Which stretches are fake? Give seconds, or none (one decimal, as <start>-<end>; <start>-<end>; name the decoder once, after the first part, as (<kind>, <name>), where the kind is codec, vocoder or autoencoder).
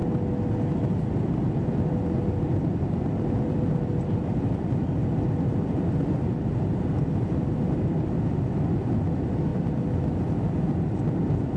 0.5-11.6 (vocoder, BigVGAN v2)